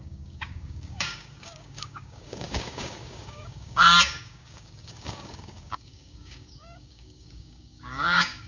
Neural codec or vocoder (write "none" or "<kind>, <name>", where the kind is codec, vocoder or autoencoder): codec, DAC